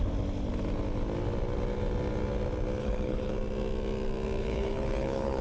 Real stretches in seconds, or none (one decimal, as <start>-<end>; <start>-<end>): 0.0-2.8; 3.3-4.4